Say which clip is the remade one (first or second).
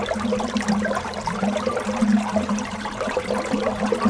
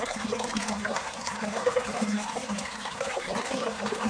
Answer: second